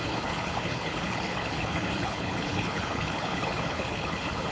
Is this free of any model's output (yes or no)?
no